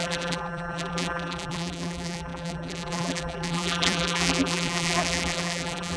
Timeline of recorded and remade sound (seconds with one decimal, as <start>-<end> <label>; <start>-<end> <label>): 0.0-6.0 remade